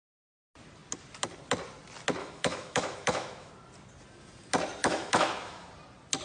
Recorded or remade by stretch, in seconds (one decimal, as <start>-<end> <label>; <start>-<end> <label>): 0.0-2.2 recorded; 2.2-3.5 remade; 3.5-4.8 recorded; 4.8-5.7 remade; 5.7-6.2 recorded